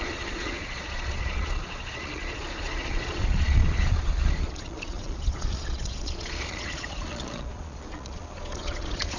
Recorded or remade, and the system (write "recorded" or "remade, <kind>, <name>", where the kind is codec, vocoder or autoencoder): remade, vocoder, Vocos